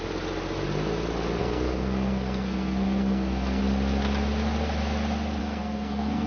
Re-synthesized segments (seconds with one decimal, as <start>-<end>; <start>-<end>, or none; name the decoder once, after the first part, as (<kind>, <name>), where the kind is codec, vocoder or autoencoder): 1.4-3.6 (codec, SNAC); 5.4-6.3